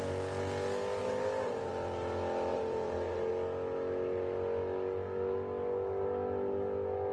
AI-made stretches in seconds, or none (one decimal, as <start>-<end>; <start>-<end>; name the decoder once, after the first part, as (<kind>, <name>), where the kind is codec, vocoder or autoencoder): 1.0-1.7 (vocoder, BigVGAN v2); 2.5-3.3